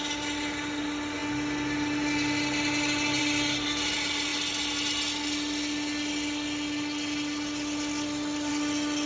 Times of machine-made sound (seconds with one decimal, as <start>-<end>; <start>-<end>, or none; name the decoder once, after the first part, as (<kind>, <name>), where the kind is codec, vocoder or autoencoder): none